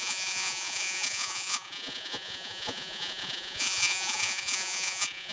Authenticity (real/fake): fake